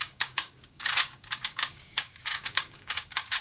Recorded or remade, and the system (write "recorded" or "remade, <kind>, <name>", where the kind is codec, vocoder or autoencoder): remade, codec, DAC